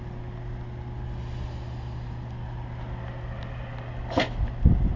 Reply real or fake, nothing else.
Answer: real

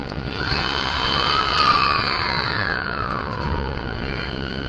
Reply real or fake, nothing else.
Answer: fake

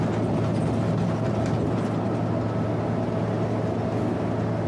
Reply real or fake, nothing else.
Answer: real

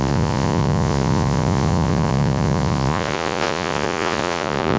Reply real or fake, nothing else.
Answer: fake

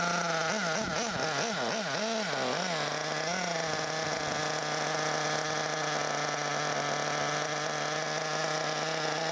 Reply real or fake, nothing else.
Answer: real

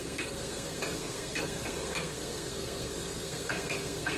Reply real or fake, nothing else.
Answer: fake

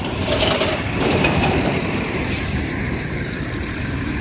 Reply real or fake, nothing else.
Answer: fake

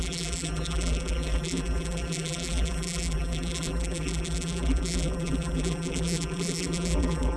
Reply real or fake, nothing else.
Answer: fake